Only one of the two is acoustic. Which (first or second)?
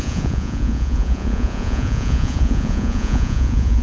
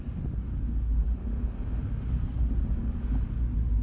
second